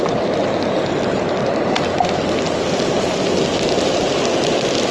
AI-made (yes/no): no